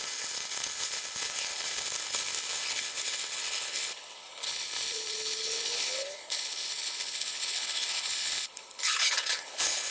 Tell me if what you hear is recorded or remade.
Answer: remade